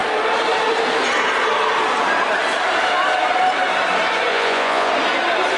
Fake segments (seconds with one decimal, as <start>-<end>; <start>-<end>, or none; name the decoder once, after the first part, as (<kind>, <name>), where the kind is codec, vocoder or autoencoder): 4.3-4.9 (vocoder, Vocos)